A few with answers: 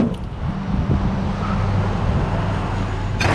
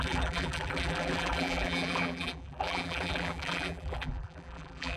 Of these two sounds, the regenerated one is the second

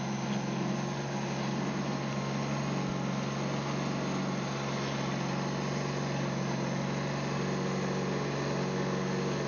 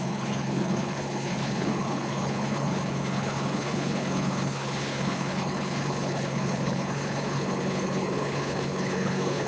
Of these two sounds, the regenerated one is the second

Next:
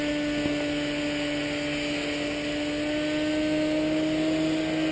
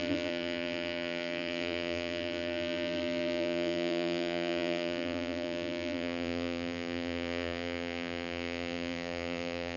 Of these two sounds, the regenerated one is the second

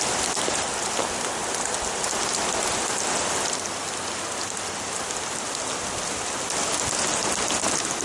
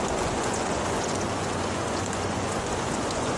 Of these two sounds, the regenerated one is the second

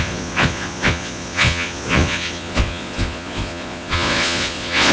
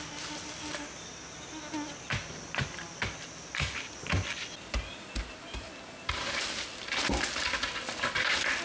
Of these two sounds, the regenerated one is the first